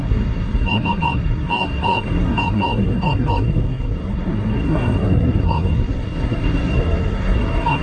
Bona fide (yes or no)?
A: no